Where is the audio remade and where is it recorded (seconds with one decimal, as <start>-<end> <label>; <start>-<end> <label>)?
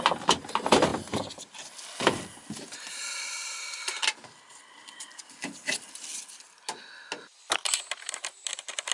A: 0.0-8.9 recorded